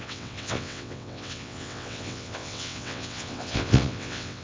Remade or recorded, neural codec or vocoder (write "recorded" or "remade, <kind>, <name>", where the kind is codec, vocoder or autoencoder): remade, vocoder, WaveNeXt